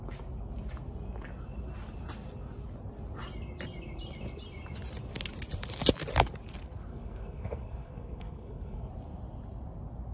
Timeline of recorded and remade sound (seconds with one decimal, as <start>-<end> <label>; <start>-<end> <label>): 0.0-6.9 recorded; 6.9-8.9 remade; 8.9-10.1 recorded